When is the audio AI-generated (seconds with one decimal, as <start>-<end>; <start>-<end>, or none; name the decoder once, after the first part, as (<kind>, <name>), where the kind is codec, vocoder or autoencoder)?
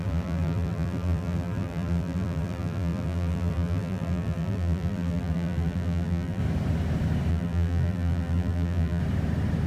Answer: 0.0-6.4 (vocoder, BigVGAN v2); 7.3-9.0